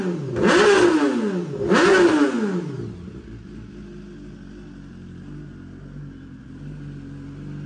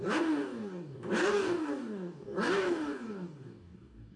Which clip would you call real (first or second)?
first